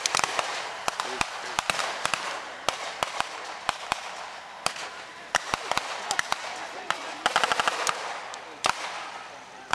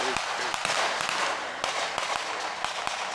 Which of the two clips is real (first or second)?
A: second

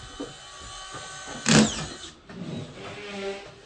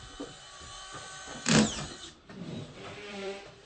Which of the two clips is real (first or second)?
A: first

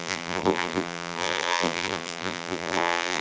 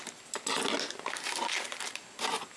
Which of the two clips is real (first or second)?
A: second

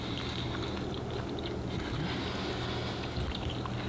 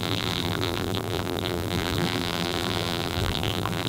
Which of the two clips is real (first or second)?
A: first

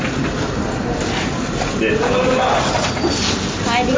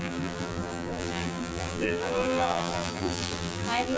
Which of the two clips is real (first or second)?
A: first